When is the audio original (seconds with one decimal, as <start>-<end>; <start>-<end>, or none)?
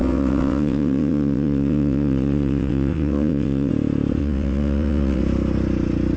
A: 3.7-4.2; 5.2-6.2